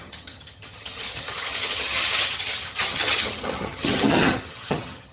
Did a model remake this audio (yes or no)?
yes